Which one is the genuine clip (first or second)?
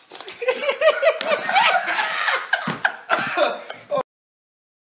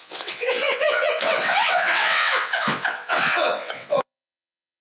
first